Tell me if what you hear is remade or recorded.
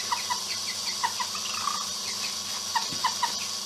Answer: recorded